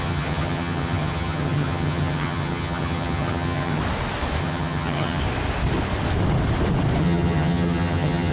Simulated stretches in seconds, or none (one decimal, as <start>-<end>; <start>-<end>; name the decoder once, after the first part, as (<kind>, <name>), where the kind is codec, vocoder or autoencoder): 0.0-3.8 (vocoder, HiFi-GAN); 4.4-5.2; 7.0-8.3